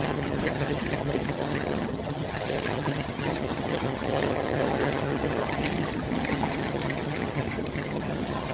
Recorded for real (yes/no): no